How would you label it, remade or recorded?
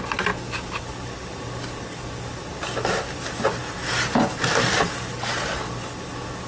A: recorded